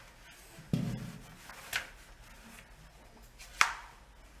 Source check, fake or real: real